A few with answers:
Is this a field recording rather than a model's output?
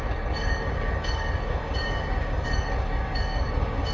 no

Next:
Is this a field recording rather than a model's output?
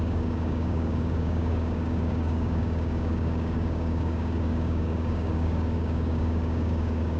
no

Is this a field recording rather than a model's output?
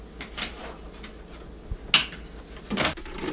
yes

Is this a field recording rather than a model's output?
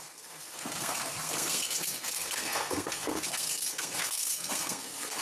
no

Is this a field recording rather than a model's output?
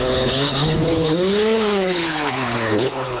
no